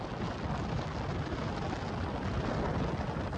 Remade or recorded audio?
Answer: recorded